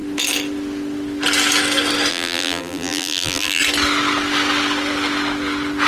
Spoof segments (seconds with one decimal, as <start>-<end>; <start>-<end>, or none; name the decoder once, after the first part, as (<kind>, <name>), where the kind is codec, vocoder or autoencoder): 2.1-3.6 (vocoder, BigVGAN v2)